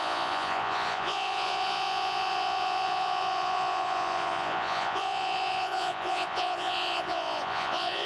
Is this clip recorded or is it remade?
remade